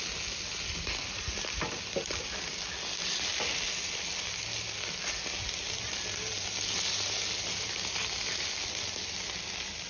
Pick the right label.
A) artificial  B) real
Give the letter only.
B